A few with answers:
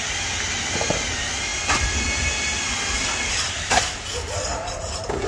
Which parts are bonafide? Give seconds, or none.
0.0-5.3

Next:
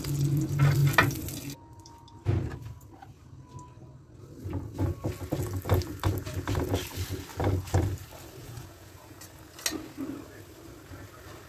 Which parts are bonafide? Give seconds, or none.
0.0-8.4; 9.2-11.5

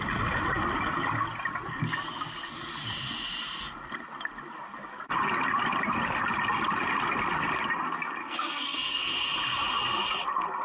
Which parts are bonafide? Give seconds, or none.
0.0-8.2; 9.1-10.6

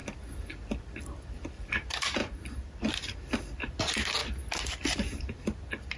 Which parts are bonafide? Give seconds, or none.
0.0-6.0

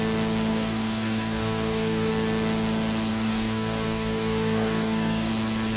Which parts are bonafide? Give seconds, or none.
0.0-0.5; 2.1-3.1; 5.3-5.8